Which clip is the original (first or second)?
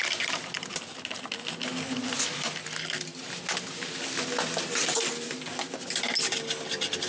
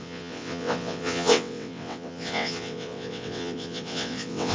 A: first